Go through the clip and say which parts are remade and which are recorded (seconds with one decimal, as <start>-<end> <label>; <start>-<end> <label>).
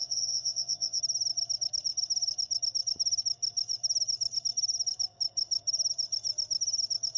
0.0-1.0 remade; 1.0-7.2 recorded